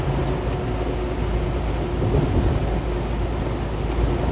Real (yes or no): yes